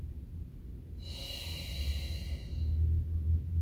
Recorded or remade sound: recorded